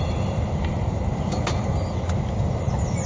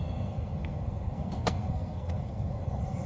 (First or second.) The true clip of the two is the first